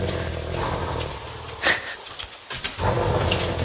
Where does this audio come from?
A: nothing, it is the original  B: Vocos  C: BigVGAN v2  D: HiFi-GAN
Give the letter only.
A